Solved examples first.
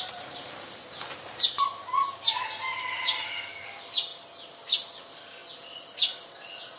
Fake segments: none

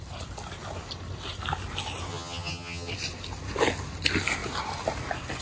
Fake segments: 2.1-2.9

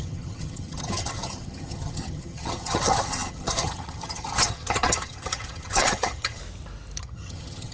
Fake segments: 0.0-6.4; 7.0-7.7

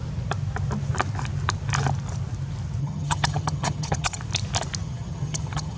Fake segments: 2.8-4.2; 4.8-5.8